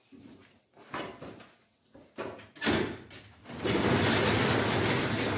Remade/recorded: recorded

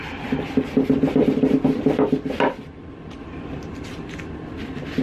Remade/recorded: recorded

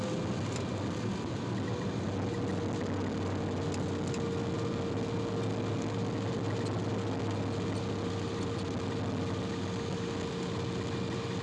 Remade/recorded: recorded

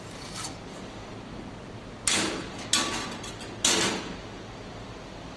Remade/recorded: recorded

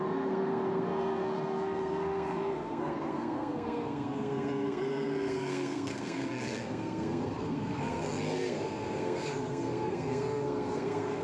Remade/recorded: remade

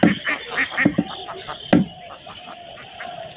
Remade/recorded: recorded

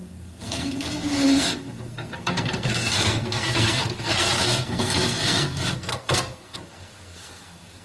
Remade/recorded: remade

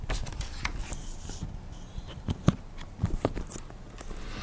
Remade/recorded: recorded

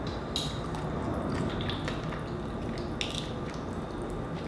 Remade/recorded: recorded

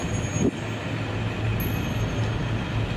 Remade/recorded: recorded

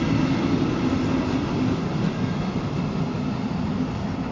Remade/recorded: recorded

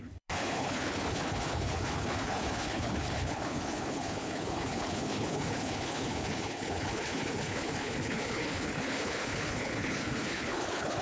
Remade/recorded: remade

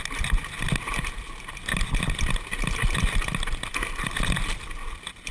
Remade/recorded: recorded